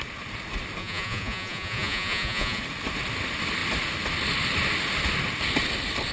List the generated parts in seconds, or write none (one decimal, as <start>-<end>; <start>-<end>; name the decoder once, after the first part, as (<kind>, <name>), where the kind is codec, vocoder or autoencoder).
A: 0.8-2.6 (vocoder, Vocos)